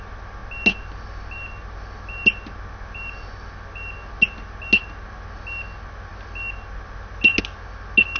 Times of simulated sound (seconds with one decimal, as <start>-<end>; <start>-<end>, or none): none